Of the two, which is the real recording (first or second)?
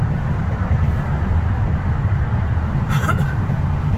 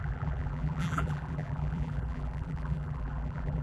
first